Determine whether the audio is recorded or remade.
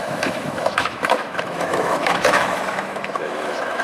remade